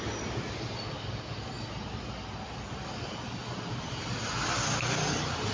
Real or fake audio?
real